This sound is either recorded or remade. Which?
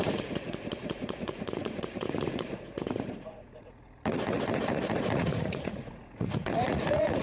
remade